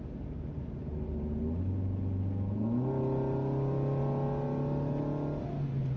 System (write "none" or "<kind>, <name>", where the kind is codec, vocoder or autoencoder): none